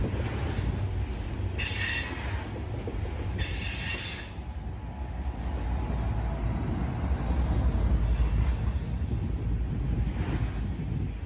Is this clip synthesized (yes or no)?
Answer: no